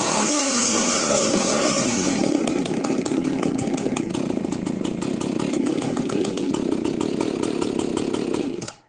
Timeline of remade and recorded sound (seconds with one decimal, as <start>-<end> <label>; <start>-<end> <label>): 0.0-4.1 remade; 4.1-5.5 recorded; 5.5-6.5 remade; 6.5-8.4 recorded; 8.4-8.9 remade